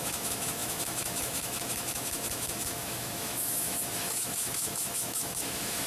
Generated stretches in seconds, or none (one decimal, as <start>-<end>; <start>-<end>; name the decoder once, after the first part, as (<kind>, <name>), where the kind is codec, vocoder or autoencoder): 0.0-5.9 (autoencoder, DAC-VAE)